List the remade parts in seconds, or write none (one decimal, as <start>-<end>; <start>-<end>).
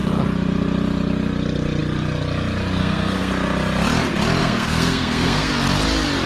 2.8-3.3; 4.4-5.5